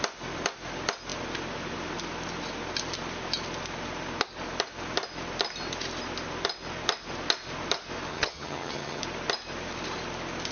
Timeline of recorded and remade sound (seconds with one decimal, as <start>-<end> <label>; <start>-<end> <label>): 0.0-8.1 recorded; 8.1-9.0 remade; 9.0-10.5 recorded